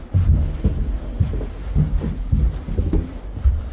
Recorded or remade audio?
recorded